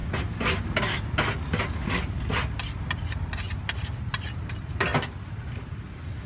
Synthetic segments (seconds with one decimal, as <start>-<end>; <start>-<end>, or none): none